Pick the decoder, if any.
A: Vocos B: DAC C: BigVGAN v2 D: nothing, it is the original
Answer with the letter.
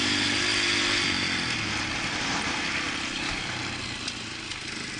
D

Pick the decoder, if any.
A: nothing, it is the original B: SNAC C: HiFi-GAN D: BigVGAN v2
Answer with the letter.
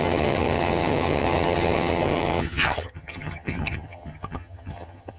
C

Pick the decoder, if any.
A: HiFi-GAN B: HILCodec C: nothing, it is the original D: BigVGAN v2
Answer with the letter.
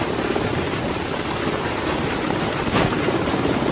C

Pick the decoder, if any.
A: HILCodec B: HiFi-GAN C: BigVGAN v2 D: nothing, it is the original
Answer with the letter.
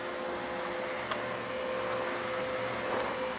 D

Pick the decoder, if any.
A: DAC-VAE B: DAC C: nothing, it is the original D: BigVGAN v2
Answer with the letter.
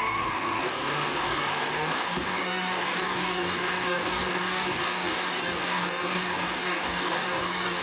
B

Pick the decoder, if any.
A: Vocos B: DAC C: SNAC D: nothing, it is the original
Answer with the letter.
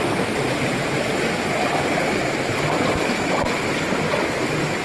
D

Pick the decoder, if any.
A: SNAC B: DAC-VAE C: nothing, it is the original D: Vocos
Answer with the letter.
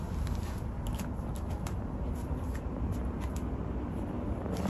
C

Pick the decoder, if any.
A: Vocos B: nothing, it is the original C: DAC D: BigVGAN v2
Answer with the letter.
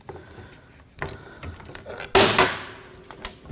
B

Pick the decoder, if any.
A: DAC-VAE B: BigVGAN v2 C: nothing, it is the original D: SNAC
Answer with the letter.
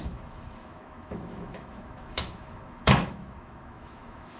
A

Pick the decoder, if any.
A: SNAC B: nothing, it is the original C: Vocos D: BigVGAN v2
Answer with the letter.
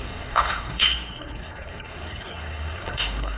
A